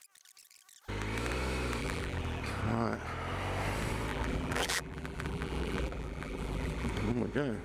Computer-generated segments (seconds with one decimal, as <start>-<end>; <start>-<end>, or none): 1.8-2.4; 4.1-6.9